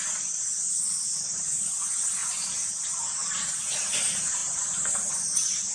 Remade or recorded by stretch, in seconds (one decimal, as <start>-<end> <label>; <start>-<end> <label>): 0.0-5.7 remade